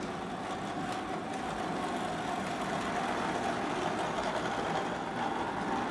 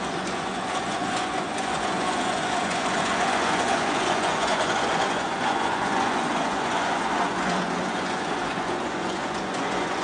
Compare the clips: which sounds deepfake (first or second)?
second